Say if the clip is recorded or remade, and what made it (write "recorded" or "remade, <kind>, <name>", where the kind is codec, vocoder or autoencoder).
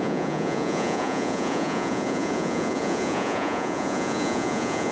remade, vocoder, Vocos